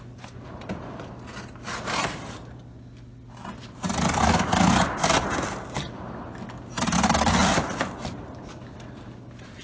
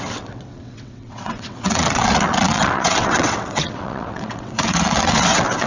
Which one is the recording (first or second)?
first